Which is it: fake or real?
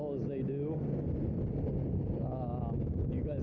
real